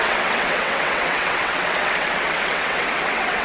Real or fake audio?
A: fake